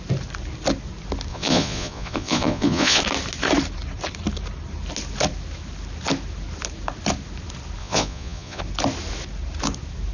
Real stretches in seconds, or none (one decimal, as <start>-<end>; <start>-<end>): 0.0-1.3; 3.0-7.8; 8.6-10.1